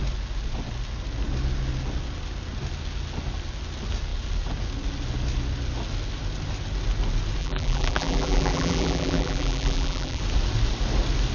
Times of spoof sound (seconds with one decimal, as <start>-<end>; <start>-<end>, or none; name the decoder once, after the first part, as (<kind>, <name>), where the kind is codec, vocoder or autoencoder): 7.4-10.2 (vocoder, BigVGAN v2)